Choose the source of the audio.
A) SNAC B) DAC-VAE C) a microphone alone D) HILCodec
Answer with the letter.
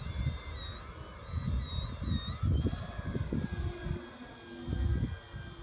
C